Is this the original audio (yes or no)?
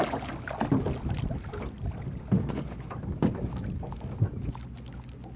yes